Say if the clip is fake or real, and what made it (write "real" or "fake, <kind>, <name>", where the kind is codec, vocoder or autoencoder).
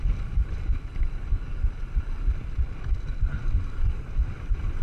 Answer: real